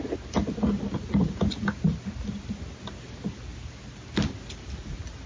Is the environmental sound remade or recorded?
recorded